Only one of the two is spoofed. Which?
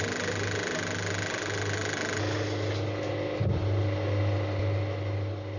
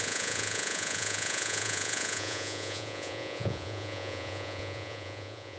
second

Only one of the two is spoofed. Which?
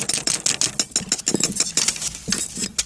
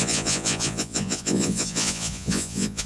second